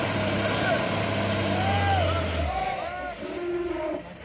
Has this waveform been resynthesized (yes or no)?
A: no